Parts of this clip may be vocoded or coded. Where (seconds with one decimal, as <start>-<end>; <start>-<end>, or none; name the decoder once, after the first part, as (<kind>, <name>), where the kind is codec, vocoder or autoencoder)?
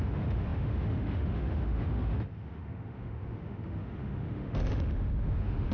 0.0-5.7 (autoencoder, DAC-VAE)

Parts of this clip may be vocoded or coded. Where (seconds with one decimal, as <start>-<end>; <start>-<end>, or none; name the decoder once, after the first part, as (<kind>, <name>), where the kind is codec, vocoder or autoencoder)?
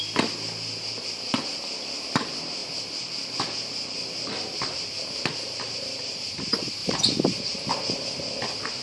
6.8-7.7 (vocoder, BigVGAN v2)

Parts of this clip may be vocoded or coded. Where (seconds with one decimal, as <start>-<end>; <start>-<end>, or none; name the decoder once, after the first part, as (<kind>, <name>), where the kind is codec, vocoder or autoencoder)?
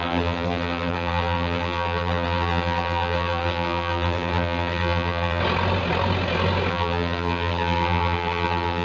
0.0-5.4 (vocoder, BigVGAN v2); 6.7-8.8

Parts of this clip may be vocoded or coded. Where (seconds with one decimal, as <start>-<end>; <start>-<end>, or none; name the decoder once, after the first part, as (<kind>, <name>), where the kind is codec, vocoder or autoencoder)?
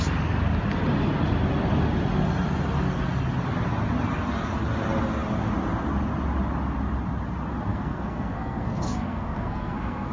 7.7-10.1 (codec, SNAC)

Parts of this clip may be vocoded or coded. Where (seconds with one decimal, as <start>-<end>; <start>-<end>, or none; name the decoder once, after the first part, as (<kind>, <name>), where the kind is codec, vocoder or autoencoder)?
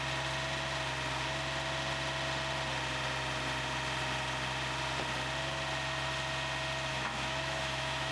6.9-8.1 (autoencoder, DAC-VAE)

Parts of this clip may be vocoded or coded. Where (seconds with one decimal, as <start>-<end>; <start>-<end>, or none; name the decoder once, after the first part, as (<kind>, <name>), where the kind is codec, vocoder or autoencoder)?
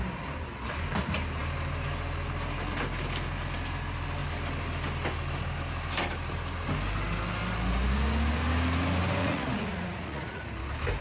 9.2-10.4 (vocoder, Vocos)